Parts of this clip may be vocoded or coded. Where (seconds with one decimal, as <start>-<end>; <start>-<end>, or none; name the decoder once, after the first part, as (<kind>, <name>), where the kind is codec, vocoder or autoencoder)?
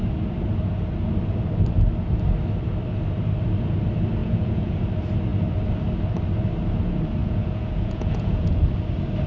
4.2-4.8 (vocoder, Vocos); 7.2-8.6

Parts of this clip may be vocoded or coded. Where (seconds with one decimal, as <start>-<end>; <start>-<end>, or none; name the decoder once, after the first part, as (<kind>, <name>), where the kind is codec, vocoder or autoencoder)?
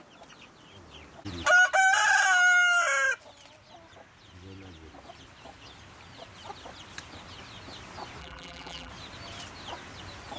8.2-8.9 (vocoder, BigVGAN v2)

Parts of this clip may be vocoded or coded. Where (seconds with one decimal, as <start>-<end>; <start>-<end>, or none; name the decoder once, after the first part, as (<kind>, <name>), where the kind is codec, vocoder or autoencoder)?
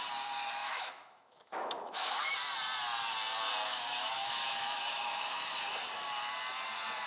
0.6-2.3 (autoencoder, DAC-VAE); 3.7-5.5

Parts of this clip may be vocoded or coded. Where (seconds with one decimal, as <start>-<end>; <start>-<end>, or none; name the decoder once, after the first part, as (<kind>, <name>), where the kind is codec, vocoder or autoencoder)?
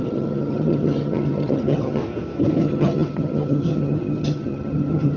0.0-2.0 (vocoder, HiFi-GAN); 2.6-5.2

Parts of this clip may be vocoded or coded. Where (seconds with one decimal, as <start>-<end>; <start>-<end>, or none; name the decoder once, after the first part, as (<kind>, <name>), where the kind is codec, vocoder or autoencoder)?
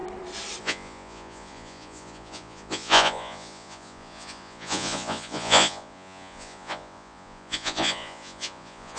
0.6-9.0 (vocoder, Vocos)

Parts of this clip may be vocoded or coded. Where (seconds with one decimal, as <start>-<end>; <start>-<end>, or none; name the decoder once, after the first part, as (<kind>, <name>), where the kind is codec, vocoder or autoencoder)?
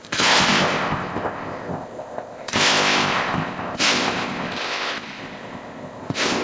0.0-6.4 (codec, ZipCodec)